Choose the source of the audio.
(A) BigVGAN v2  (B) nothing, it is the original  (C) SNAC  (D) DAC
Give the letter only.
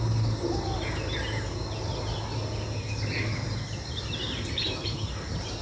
B